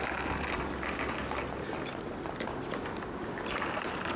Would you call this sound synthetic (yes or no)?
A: no